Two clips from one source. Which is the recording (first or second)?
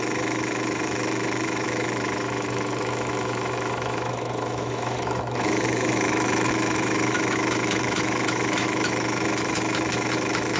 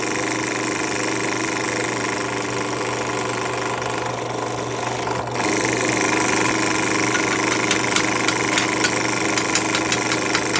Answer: second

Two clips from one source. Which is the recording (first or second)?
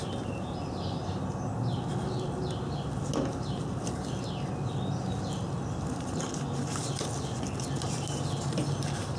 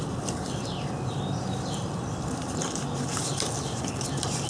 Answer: first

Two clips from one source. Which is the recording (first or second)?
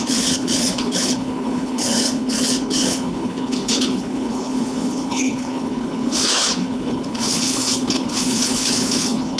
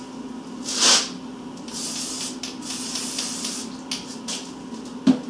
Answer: second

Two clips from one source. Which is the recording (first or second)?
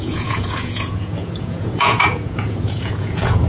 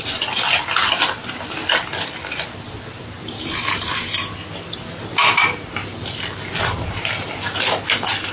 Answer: second